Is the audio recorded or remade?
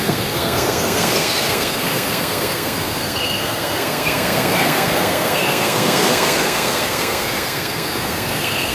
remade